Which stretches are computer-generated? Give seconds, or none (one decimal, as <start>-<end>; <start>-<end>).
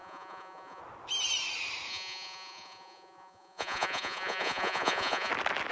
0.0-0.8; 1.9-5.3